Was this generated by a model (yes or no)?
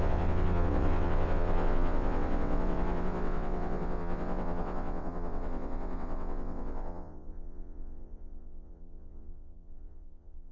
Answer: yes